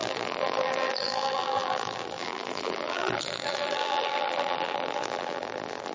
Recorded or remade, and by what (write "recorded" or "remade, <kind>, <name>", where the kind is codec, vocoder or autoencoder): remade, vocoder, BigVGAN v2